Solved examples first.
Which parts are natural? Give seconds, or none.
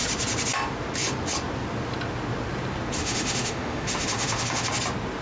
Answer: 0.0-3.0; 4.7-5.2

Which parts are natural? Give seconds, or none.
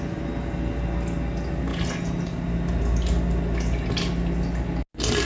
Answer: 0.0-5.3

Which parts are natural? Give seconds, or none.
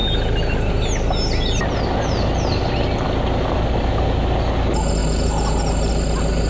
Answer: 0.0-6.5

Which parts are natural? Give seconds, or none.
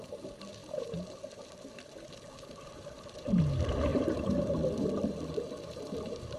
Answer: 0.0-3.9; 5.1-6.4